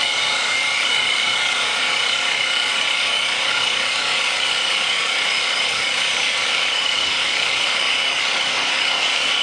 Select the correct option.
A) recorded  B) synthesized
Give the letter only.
B